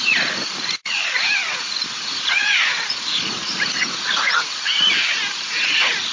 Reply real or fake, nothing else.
fake